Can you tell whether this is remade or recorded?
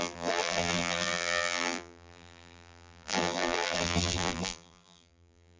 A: remade